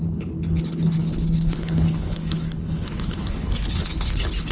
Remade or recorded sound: remade